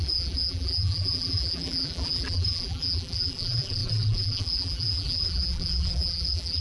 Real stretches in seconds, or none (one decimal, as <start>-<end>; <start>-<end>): none